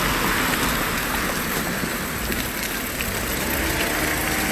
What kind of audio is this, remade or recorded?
recorded